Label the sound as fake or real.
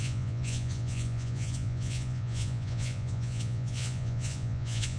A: fake